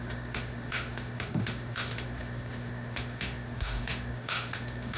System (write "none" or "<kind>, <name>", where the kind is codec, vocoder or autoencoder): autoencoder, DAC-VAE